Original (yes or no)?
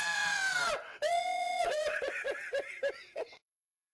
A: no